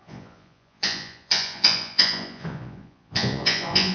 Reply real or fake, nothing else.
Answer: fake